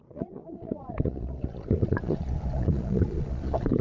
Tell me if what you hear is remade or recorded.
remade